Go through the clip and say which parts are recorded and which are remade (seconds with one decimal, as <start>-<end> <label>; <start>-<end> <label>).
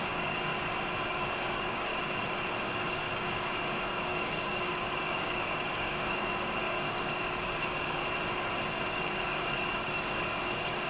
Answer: 0.0-0.5 remade; 0.5-1.1 recorded; 1.1-1.9 remade; 1.9-2.6 recorded; 2.6-8.0 remade; 8.0-8.9 recorded; 8.9-10.9 remade